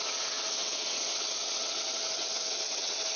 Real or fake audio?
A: fake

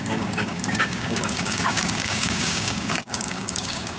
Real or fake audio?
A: fake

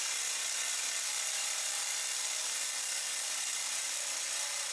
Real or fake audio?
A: fake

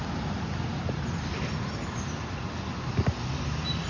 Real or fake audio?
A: real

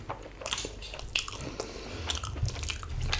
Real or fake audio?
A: real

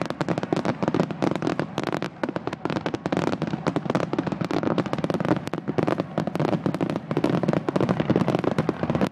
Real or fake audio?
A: real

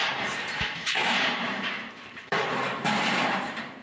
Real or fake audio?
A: fake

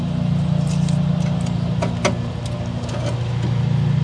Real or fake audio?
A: real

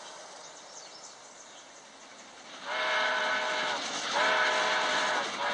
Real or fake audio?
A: real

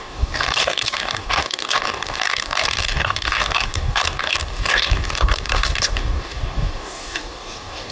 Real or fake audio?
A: fake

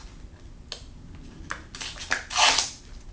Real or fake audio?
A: real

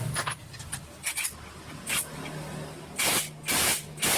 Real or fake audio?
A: real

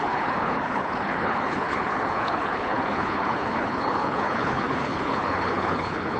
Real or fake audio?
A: fake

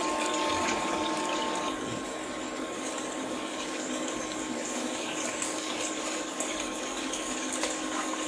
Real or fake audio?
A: fake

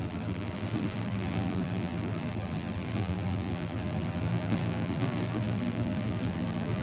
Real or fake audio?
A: fake